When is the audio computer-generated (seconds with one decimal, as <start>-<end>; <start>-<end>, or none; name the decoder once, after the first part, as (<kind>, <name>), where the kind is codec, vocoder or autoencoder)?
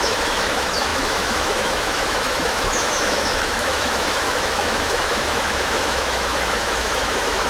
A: 0.0-7.5 (autoencoder, DAC-VAE)